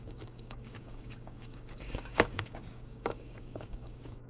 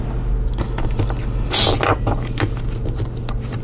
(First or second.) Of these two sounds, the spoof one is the first